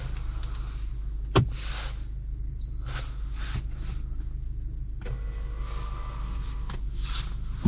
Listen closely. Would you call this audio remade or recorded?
recorded